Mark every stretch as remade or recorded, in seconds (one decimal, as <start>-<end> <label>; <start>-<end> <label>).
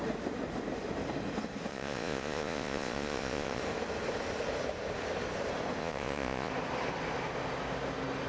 0.0-1.7 recorded; 1.7-3.6 remade; 3.6-5.8 recorded; 5.8-6.5 remade; 6.5-8.3 recorded